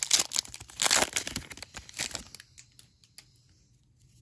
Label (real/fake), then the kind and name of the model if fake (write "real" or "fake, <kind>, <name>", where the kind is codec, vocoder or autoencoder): real